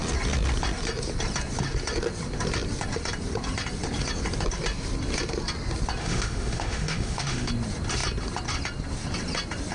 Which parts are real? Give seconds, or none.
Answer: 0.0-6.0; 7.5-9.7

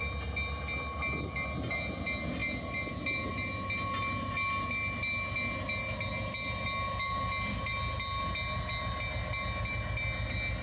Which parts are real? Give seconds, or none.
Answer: 0.0-10.6

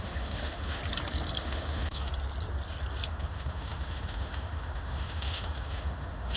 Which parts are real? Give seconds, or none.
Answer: 0.8-1.4; 2.1-3.1

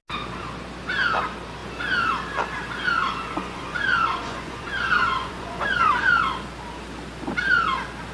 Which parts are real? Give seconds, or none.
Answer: 0.0-3.0; 6.1-8.1

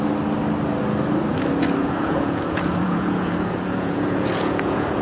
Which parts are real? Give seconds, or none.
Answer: 0.0-1.8

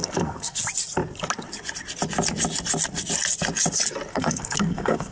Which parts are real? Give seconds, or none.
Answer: 0.6-4.1

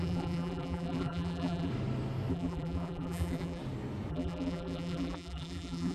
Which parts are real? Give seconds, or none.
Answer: 1.7-2.3; 3.6-4.1